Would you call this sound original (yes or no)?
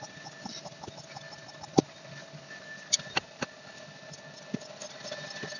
yes